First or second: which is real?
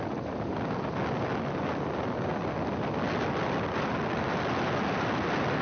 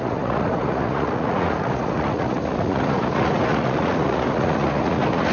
first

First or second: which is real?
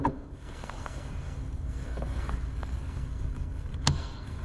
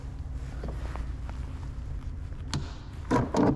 second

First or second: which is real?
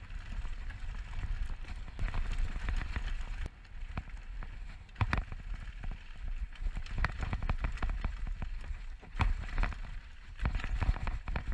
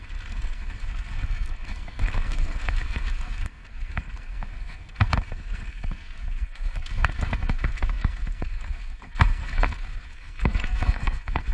first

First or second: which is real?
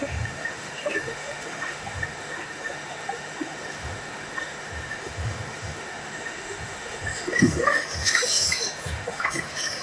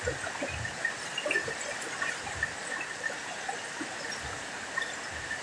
second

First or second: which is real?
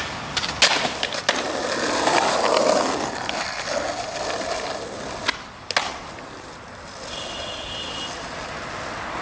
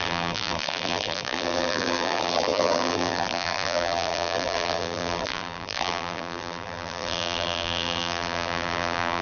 first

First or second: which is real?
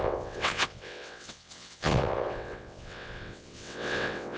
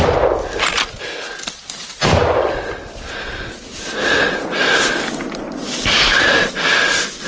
second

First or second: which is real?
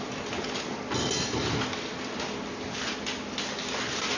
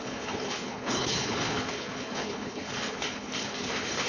first